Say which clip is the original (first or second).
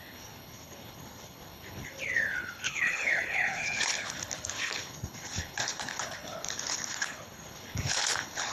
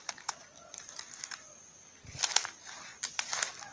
second